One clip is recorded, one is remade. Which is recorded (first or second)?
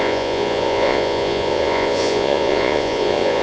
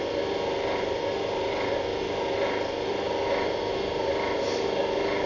second